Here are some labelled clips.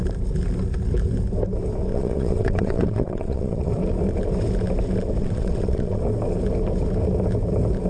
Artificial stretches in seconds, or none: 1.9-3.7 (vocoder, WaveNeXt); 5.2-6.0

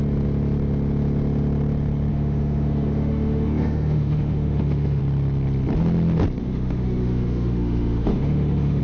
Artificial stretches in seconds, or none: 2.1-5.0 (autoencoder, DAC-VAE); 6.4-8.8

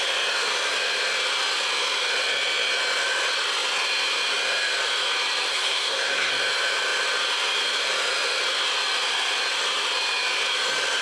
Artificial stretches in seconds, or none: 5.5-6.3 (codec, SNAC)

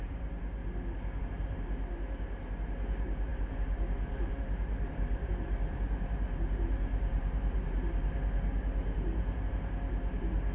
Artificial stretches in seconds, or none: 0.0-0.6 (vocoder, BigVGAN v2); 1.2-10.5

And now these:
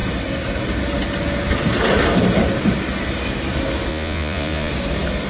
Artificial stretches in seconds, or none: 3.9-4.7 (vocoder, Vocos)

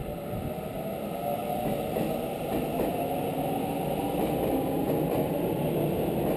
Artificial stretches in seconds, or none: none

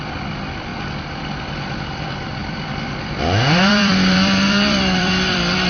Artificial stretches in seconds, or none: 0.0-0.7 (vocoder, BigVGAN v2); 1.5-5.7